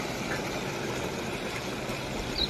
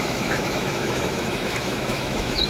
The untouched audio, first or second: first